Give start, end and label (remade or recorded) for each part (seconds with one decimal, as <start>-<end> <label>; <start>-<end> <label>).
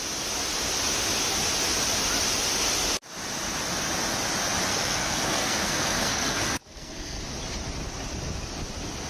0.0-4.7 recorded; 4.7-7.2 remade; 7.2-9.1 recorded